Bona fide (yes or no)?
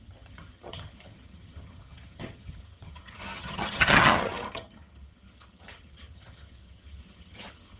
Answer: no